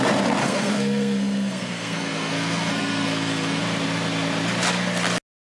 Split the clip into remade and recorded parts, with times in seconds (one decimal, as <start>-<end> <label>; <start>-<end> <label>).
0.0-0.4 recorded; 0.4-3.6 remade; 3.6-5.4 recorded